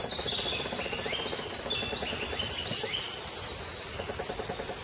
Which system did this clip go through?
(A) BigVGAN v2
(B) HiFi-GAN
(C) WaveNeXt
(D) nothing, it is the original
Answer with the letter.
D